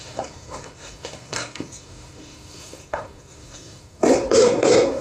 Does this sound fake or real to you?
fake